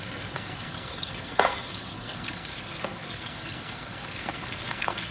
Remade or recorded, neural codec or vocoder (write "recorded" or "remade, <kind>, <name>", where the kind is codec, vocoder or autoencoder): remade, codec, SNAC